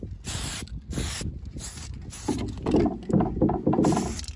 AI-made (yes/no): no